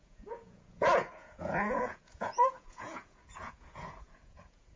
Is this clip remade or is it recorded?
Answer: remade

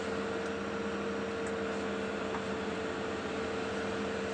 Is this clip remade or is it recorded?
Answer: recorded